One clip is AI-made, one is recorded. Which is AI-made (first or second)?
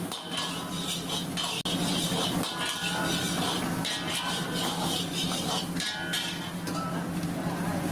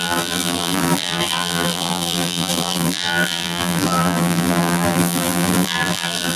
second